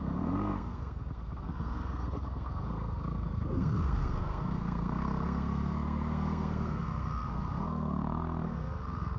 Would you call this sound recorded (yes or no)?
no